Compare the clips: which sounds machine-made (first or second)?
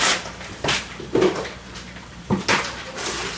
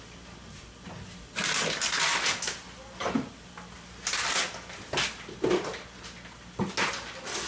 first